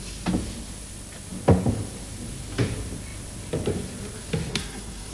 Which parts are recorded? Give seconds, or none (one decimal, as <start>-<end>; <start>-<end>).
0.0-4.5